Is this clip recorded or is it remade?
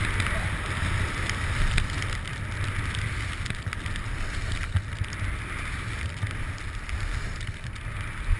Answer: recorded